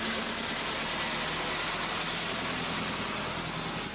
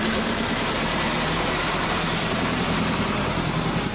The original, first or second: first